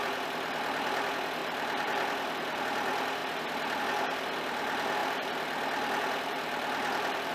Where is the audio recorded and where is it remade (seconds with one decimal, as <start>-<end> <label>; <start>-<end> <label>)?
0.0-1.4 recorded; 1.4-2.6 remade; 2.6-3.2 recorded; 3.2-3.8 remade; 3.8-5.0 recorded; 5.0-7.3 remade